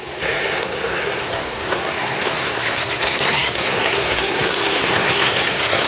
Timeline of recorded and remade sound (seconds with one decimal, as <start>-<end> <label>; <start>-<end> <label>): 0.0-5.9 remade